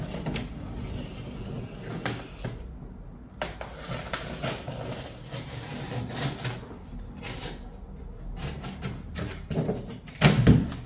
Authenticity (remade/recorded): recorded